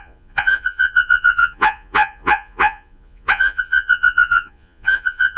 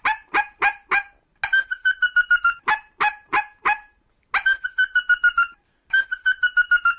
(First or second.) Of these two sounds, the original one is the second